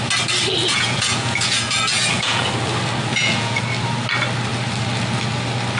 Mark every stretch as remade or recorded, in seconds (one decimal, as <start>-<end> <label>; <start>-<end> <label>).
0.0-0.6 recorded; 0.6-2.5 remade; 2.5-3.1 recorded; 3.1-3.6 remade; 3.6-5.8 recorded